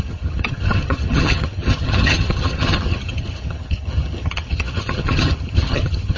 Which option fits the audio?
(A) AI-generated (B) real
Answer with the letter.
A